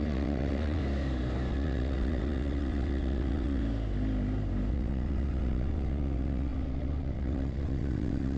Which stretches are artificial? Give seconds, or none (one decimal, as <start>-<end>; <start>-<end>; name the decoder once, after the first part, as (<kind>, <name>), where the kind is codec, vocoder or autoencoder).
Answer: 0.0-0.8 (vocoder, WaveNeXt); 1.5-3.6; 4.7-8.4